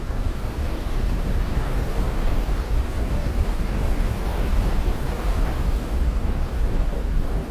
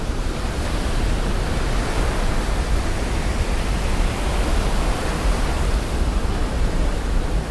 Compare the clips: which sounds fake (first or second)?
first